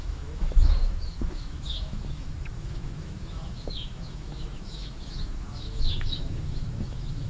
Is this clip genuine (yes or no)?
no